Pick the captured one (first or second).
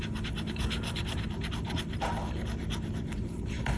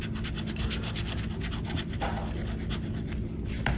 second